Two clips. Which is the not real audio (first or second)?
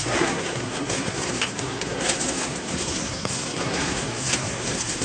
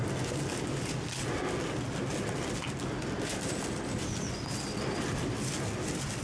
first